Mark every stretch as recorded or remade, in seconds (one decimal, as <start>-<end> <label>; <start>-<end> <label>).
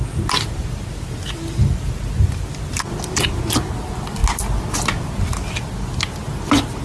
0.0-6.8 recorded